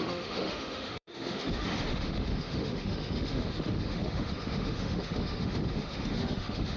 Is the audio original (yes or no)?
no